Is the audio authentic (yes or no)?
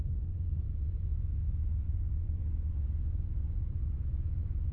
no